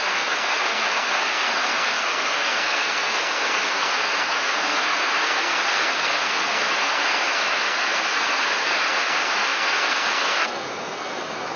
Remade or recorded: remade